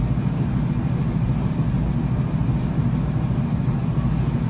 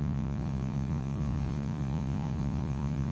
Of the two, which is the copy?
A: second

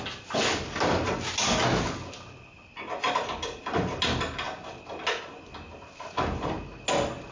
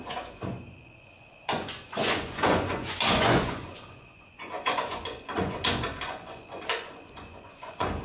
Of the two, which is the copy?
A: second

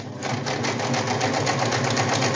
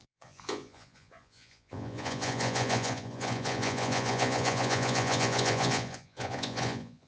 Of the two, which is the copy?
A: second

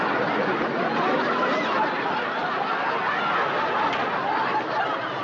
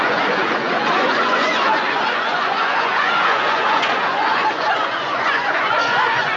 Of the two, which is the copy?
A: second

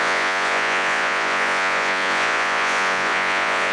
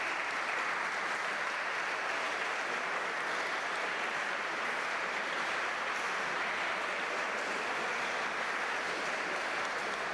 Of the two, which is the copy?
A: first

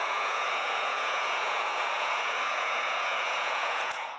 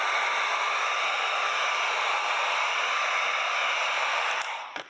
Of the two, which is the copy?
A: first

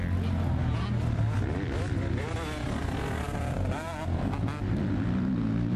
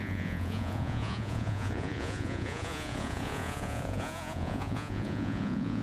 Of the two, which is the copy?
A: second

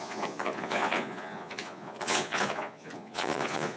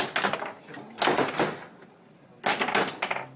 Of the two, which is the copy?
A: first